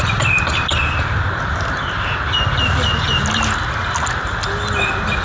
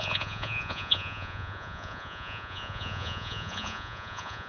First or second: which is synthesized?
second